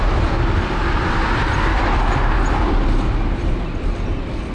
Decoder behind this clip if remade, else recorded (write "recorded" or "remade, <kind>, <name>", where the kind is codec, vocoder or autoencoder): recorded